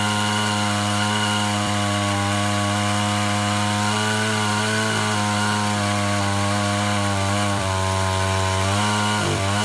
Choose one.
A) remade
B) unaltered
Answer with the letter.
A